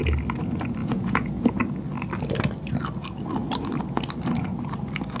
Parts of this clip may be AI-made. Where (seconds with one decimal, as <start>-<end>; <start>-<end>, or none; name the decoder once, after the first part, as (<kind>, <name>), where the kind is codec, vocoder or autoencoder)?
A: 0.8-1.6 (vocoder, Vocos)